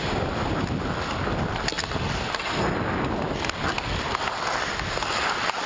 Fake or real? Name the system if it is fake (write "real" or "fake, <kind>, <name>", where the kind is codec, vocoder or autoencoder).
real